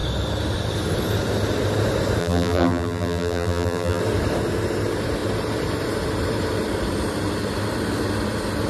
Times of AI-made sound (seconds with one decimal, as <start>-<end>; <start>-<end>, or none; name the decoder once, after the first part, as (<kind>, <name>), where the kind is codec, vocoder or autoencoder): 2.2-4.0 (vocoder, BigVGAN v2)